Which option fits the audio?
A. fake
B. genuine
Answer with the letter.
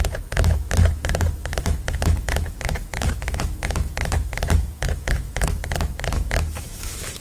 A